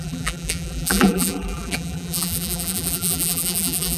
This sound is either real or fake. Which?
fake